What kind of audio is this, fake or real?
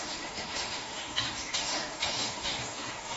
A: fake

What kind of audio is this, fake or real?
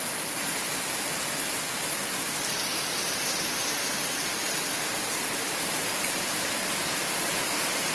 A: real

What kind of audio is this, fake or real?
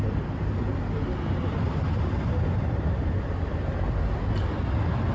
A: real